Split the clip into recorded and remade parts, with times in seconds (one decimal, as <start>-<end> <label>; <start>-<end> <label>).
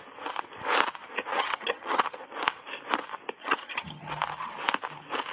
0.0-1.3 recorded; 1.3-2.0 remade; 2.0-3.4 recorded; 3.4-4.1 remade; 4.1-5.3 recorded